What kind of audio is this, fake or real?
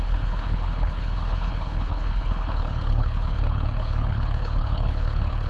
fake